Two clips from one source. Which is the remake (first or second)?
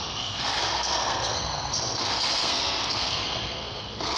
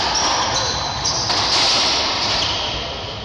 first